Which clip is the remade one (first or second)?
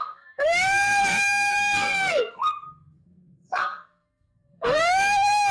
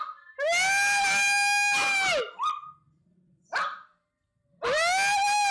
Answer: first